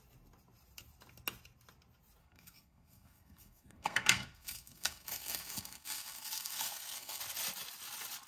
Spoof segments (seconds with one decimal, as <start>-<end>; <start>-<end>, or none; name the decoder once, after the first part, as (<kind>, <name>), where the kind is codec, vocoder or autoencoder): 2.2-7.2 (codec, SNAC)